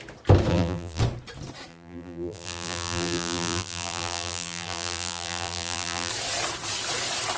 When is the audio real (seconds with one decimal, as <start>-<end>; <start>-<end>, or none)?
0.0-0.5; 1.0-1.7; 6.1-7.4